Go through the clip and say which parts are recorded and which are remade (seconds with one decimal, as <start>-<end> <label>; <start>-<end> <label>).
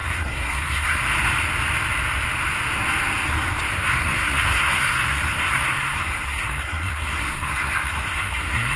0.0-1.0 remade; 1.0-3.7 recorded; 3.7-8.8 remade